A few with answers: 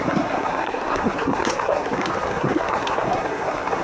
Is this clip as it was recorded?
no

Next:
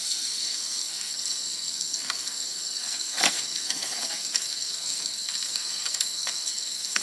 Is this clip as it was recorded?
no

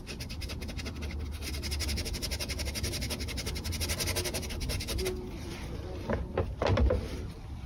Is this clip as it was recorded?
yes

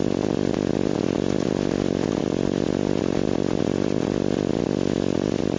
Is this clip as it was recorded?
yes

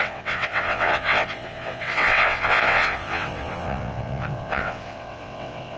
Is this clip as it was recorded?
no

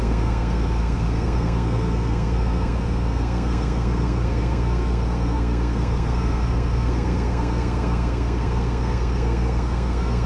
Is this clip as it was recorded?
no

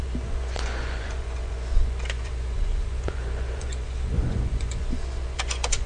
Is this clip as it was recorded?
no